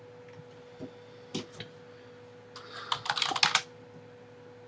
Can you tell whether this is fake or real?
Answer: real